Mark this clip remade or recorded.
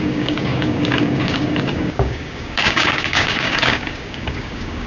remade